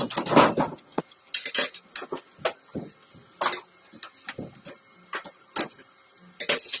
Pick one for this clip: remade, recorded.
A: recorded